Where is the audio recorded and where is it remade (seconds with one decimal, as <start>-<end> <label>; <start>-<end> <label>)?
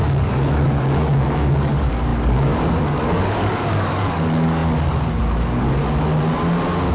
0.0-5.8 remade; 5.8-6.9 recorded